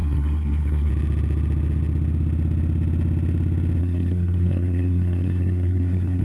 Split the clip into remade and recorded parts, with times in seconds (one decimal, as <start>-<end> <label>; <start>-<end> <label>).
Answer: 0.0-0.9 remade; 0.9-3.8 recorded; 3.8-6.2 remade